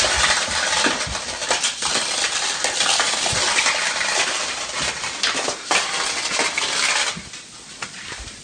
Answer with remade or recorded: recorded